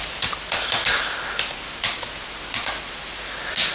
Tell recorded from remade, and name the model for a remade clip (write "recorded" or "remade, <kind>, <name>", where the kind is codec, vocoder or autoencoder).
recorded